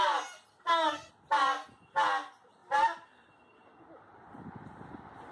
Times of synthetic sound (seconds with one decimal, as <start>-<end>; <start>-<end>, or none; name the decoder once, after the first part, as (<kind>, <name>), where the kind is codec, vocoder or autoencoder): 0.5-1.1 (codec, SNAC)